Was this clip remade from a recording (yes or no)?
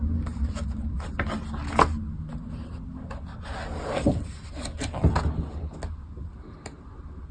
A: no